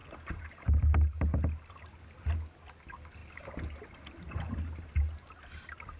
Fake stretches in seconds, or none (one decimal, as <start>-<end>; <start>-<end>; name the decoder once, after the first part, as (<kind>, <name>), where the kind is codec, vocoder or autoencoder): 0.0-0.6 (vocoder, BigVGAN v2)